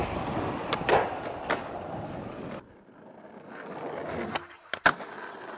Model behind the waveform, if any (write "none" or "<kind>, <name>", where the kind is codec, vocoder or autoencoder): none